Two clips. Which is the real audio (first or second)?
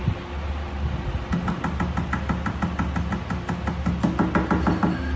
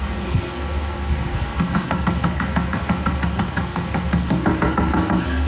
first